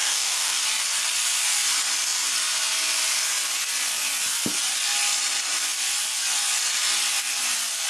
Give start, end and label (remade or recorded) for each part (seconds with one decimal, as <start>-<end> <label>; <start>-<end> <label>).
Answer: 0.0-0.6 remade; 0.6-7.9 recorded